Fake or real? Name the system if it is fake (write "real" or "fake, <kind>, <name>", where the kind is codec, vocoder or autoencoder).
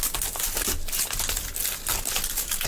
real